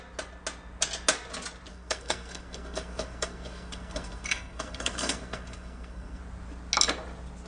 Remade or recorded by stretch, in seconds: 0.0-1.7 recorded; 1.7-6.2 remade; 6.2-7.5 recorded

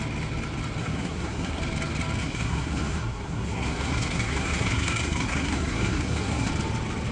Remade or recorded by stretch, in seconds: 0.0-0.8 recorded; 0.8-1.6 remade; 1.6-2.2 recorded; 2.2-6.5 remade; 6.5-7.1 recorded